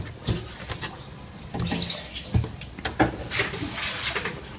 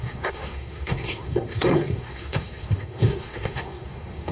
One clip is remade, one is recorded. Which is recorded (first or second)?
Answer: first